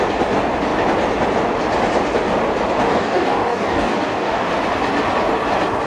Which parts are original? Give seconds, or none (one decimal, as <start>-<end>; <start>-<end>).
0.0-2.9; 4.5-5.9